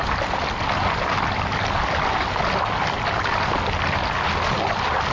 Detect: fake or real real